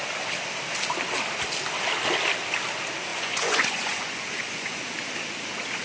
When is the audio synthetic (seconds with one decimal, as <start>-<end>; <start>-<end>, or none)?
3.1-4.8